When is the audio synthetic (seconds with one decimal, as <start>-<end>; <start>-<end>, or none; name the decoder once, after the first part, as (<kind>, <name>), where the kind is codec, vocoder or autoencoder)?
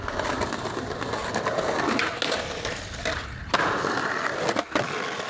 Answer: none